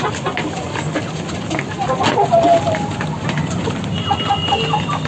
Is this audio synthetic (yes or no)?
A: no